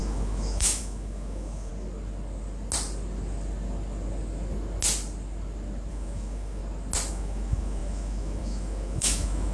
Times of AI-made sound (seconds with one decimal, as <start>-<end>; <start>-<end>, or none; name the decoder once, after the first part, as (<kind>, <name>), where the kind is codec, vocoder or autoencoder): 0.0-1.7 (autoencoder, DAC-VAE); 5.9-6.6; 7.1-9.5